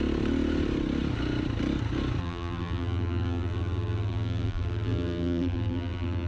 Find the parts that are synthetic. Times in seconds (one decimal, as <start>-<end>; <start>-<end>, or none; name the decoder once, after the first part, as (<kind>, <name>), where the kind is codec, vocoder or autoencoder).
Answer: 2.2-6.3 (vocoder, BigVGAN v2)